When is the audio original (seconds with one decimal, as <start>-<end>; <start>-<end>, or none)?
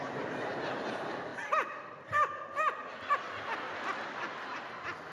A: 0.0-1.3; 4.3-5.1